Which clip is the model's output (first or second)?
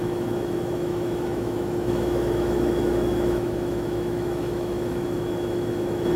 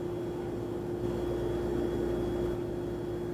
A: first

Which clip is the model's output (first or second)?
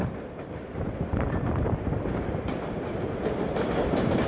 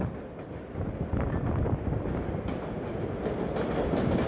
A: first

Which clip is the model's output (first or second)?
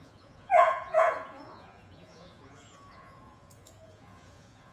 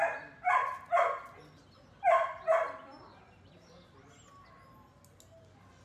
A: first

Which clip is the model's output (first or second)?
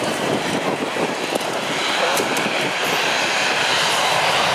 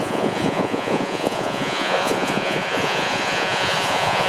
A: second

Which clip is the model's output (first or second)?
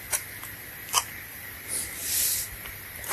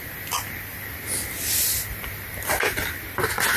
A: first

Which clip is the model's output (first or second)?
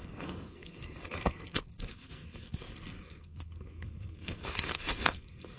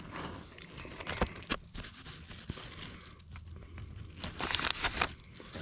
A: first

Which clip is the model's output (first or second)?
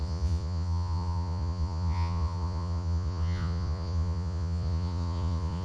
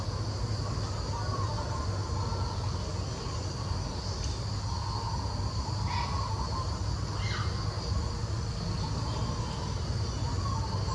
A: first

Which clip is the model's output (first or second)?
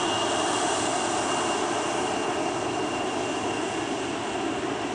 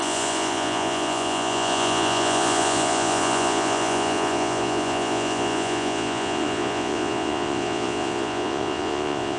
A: second